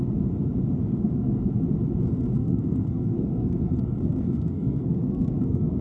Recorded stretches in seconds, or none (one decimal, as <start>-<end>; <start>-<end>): 0.0-0.8; 1.5-2.3